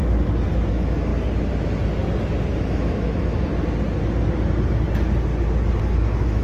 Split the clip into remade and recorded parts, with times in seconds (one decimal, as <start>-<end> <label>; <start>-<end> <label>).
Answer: 0.0-0.7 recorded; 0.7-1.1 remade; 1.1-2.6 recorded; 2.6-3.5 remade; 3.5-5.8 recorded; 5.8-6.4 remade